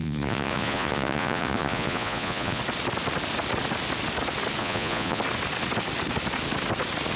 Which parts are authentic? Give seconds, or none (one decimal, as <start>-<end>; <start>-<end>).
2.6-4.6; 5.2-7.2